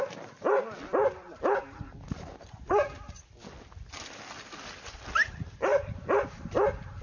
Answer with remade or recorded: recorded